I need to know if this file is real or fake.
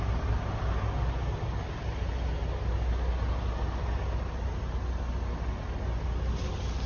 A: real